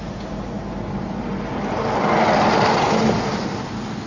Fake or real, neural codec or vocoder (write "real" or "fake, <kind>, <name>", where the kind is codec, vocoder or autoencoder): real